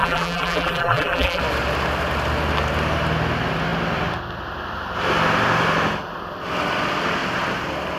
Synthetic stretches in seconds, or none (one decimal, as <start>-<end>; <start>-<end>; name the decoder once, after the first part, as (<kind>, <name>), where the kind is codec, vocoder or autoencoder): 0.0-1.4 (vocoder, BigVGAN v2)